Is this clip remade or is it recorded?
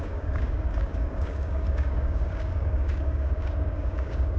remade